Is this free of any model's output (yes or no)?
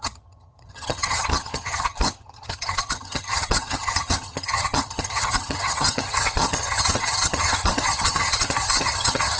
no